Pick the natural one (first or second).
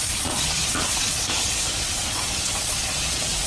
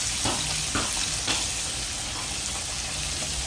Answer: second